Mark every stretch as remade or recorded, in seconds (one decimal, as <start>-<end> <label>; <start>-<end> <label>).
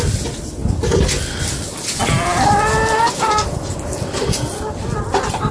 0.0-5.5 recorded